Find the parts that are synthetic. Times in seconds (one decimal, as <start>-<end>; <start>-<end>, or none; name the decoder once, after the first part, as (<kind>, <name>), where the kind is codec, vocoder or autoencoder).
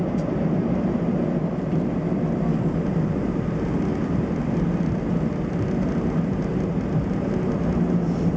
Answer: none